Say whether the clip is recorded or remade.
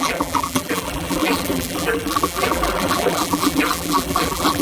remade